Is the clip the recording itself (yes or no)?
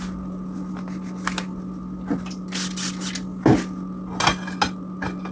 yes